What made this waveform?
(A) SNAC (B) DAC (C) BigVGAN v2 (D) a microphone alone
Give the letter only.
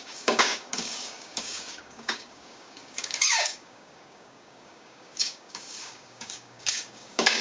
B